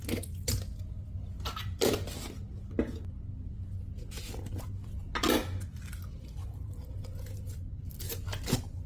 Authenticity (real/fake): real